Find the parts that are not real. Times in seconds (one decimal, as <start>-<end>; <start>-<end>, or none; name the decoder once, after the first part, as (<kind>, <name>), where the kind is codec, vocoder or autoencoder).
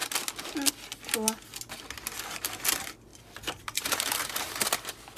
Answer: 3.1-5.2 (vocoder, BigVGAN v2)